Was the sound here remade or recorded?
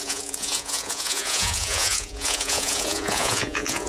remade